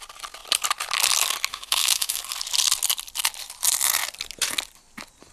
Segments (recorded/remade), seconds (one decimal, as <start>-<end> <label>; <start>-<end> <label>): 0.0-1.5 recorded; 1.5-2.2 remade; 2.2-5.3 recorded